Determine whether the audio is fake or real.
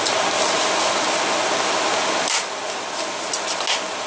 real